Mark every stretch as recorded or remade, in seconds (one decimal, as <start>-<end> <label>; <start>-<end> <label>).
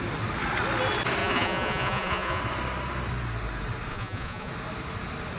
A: 0.0-1.2 recorded; 1.2-2.4 remade; 2.4-3.9 recorded; 3.9-4.5 remade; 4.5-5.4 recorded